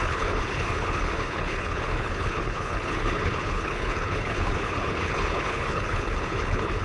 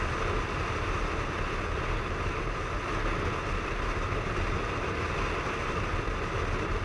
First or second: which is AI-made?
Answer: first